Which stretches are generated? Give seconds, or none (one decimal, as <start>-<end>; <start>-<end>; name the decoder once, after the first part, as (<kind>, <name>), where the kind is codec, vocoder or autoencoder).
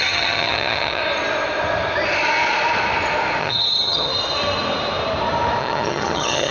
0.0-1.0 (vocoder, HiFi-GAN); 3.4-4.1; 5.6-6.5